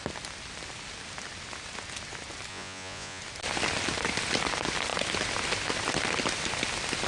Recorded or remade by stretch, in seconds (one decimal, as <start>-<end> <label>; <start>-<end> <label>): 0.0-2.5 recorded; 2.5-3.2 remade; 3.2-7.1 recorded